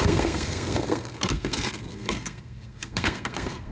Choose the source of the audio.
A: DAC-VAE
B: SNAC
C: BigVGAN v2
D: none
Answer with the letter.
B